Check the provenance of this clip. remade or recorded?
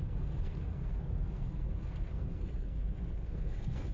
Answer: remade